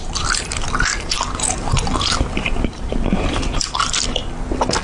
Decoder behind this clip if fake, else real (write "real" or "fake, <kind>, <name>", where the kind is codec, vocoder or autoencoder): fake, vocoder, BigVGAN v2